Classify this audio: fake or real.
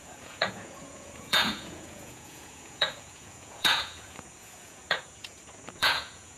fake